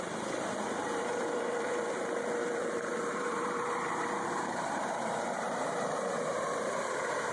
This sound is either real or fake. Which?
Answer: fake